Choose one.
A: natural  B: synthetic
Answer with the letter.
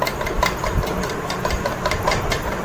A